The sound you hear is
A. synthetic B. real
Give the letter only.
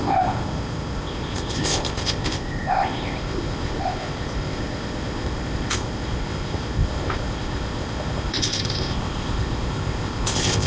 A